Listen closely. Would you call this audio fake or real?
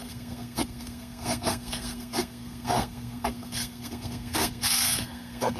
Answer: fake